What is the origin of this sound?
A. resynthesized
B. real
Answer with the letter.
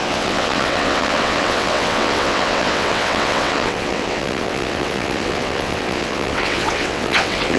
A